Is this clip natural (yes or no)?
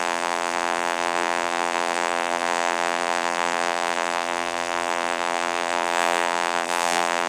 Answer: no